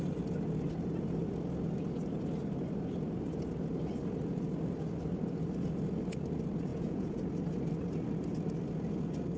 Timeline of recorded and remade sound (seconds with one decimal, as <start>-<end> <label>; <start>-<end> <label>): 0.0-6.7 recorded; 6.7-7.2 remade; 7.2-9.4 recorded